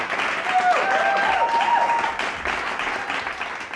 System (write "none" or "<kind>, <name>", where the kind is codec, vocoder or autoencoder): none